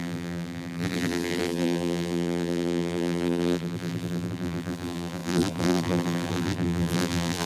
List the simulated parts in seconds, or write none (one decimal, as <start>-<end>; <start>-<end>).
0.0-7.5